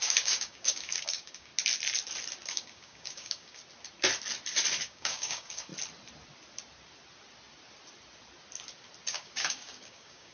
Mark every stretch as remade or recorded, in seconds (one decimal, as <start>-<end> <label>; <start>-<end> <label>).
0.0-1.5 remade; 1.5-2.5 recorded; 2.5-3.6 remade; 3.6-4.8 recorded; 4.8-5.7 remade; 5.7-9.1 recorded; 9.1-10.3 remade